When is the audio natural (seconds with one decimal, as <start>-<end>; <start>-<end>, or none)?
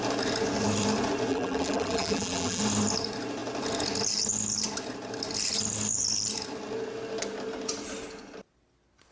0.0-1.3; 2.6-9.1